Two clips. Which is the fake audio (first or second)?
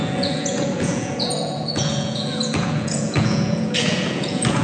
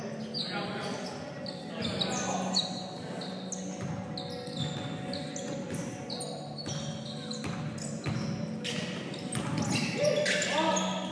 first